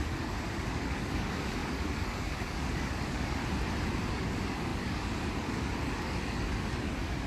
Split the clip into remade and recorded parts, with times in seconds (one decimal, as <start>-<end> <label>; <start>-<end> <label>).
0.0-3.4 remade; 3.4-4.1 recorded; 4.1-7.3 remade